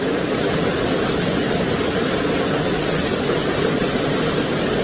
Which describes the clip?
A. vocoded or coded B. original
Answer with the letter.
B